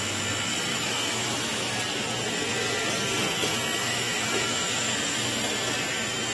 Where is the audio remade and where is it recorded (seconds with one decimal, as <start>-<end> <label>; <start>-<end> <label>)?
0.0-0.7 recorded; 0.7-1.8 remade; 1.8-3.8 recorded; 3.8-4.9 remade; 4.9-6.3 recorded